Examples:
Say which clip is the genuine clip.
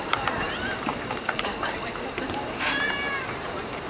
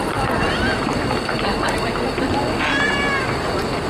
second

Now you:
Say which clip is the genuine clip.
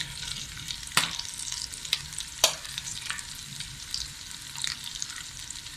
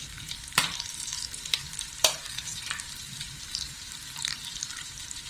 first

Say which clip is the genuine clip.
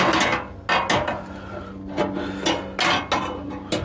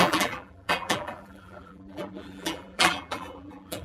first